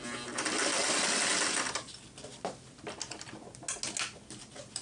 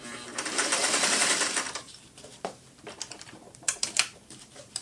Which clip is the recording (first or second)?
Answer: first